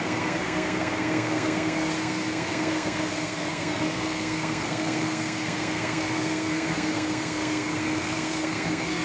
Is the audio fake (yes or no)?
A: yes